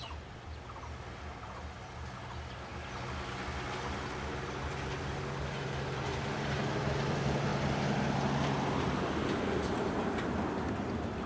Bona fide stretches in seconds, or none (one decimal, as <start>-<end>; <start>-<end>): 0.0-11.3